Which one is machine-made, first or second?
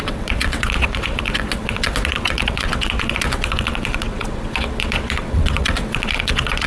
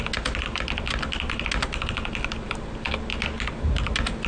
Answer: first